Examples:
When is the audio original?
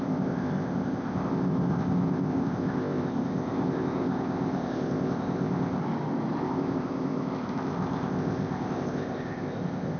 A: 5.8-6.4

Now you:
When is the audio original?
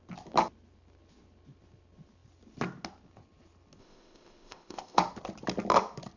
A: 0.0-3.8; 5.0-6.2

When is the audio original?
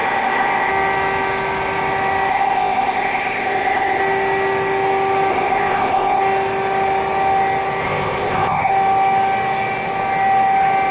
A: 0.7-2.3; 4.0-5.3; 6.2-7.8; 8.7-10.9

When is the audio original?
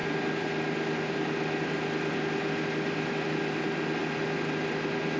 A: 0.0-5.2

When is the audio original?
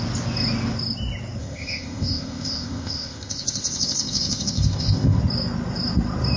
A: 0.0-1.4; 5.2-6.4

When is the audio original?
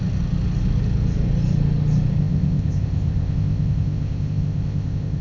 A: 0.0-2.2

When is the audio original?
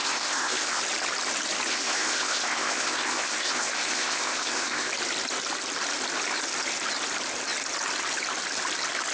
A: 0.8-1.7; 4.9-9.1